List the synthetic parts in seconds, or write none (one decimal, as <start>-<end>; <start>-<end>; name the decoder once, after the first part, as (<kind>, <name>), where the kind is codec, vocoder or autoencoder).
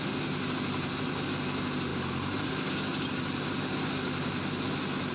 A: none